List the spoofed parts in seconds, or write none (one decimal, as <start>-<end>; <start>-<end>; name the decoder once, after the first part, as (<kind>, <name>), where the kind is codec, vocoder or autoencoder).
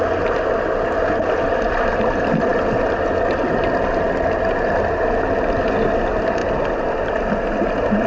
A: none